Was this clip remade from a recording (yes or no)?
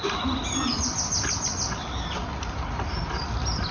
no